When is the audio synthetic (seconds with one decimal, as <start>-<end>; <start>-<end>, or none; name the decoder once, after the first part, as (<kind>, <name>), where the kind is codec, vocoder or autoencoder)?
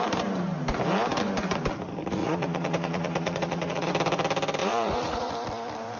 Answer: 2.2-3.9 (vocoder, Vocos); 4.6-5.3